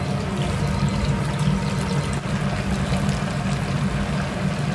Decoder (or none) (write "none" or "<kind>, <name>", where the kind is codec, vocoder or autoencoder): none